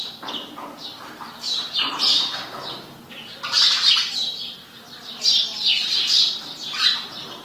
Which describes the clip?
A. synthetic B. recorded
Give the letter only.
A